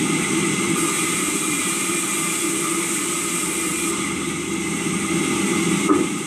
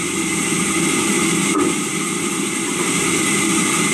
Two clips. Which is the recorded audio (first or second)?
first